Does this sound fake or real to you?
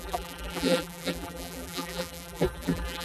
fake